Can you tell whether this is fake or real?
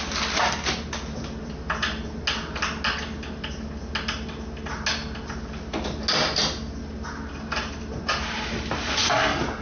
real